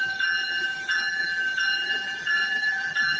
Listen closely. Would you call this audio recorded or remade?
remade